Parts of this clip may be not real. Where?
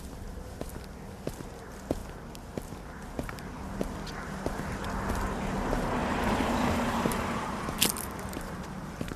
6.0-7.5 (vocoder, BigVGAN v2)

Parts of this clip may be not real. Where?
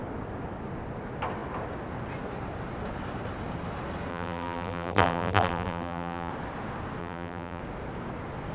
4.1-6.3 (vocoder, BigVGAN v2); 7.0-7.6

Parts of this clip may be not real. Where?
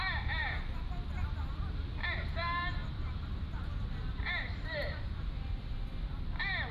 0.4-1.1 (vocoder, BigVGAN v2); 2.8-5.7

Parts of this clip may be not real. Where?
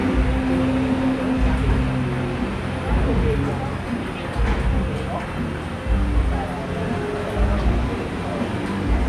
none